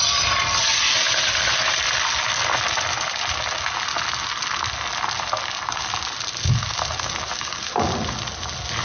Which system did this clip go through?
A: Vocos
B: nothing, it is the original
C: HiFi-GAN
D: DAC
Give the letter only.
B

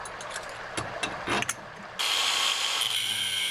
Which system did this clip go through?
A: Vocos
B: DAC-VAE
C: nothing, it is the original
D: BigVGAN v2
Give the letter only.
C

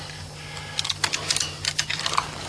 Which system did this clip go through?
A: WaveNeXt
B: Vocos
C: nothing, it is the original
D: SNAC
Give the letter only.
C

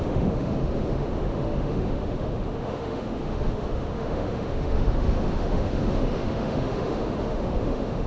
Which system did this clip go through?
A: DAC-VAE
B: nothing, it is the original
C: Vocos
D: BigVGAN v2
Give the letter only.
A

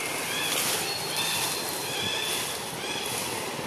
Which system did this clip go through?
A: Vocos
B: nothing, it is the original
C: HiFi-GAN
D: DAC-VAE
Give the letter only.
B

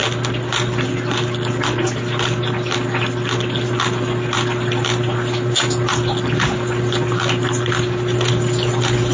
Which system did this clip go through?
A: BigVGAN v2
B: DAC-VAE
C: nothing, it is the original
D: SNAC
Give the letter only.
C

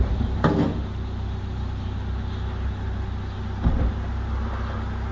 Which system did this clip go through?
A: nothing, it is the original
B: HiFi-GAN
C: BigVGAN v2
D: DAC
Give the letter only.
A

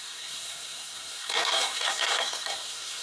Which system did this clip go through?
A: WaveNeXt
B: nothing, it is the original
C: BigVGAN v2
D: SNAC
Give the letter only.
D